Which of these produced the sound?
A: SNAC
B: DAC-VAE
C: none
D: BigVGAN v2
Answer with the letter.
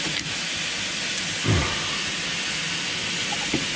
C